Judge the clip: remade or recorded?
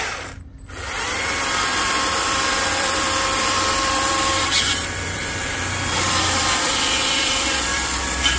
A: remade